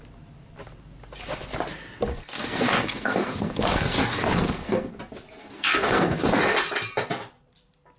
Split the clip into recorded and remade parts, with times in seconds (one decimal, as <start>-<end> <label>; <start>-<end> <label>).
0.0-2.1 recorded; 2.1-5.0 remade; 5.0-5.4 recorded; 5.4-6.4 remade; 6.4-8.0 recorded

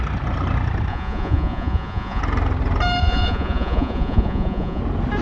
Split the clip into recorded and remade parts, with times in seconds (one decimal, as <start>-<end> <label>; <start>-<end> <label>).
0.0-0.9 recorded; 0.9-2.2 remade; 2.2-3.0 recorded; 3.0-4.8 remade; 4.8-5.2 recorded

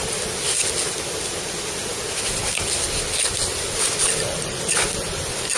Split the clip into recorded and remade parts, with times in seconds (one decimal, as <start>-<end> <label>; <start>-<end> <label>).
0.0-5.6 recorded